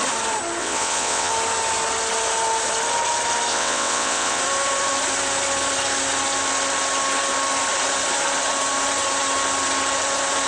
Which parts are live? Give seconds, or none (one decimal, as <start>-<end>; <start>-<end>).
0.0-0.6; 1.3-3.5; 4.4-10.5